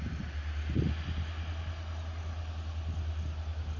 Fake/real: real